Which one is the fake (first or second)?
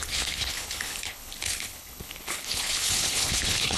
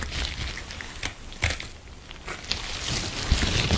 first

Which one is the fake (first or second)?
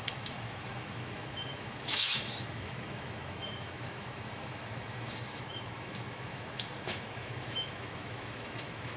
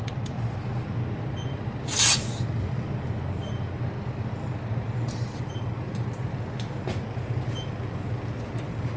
first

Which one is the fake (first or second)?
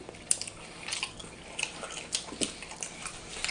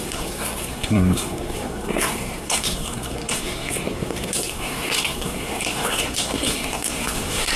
second